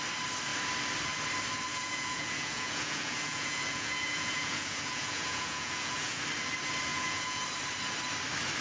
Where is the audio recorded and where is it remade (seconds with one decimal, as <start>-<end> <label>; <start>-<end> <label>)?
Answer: 0.0-1.7 recorded; 1.7-6.2 remade; 6.2-6.9 recorded; 6.9-7.4 remade; 7.4-8.6 recorded